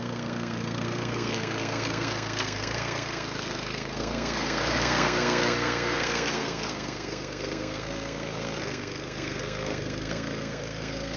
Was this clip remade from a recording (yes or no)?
yes